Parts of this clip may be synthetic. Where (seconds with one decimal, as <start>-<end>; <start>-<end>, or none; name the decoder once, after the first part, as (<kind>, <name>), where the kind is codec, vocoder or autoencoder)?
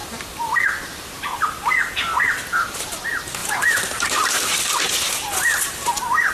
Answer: none